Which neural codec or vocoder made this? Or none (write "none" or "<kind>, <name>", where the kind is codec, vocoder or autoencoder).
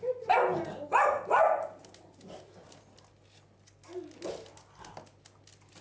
none